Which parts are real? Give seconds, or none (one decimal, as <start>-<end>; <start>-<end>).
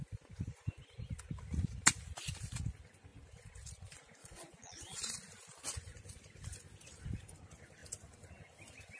0.0-4.2; 5.1-9.0